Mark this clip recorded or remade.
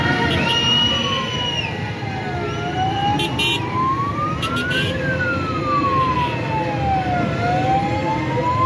recorded